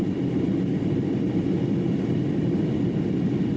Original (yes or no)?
yes